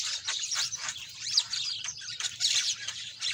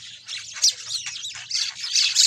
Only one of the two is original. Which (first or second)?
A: second